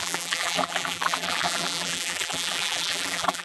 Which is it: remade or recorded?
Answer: remade